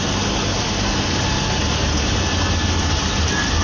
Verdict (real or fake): real